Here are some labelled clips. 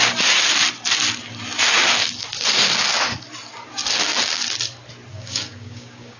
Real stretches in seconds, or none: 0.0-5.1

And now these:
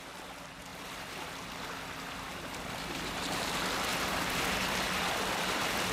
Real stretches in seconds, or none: 0.0-0.7; 3.1-3.9

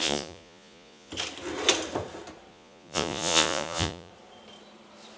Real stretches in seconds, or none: 1.1-2.5; 4.1-5.2